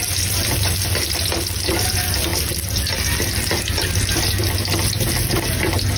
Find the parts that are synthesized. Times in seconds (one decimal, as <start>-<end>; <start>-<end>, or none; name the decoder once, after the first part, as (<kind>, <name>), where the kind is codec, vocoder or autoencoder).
none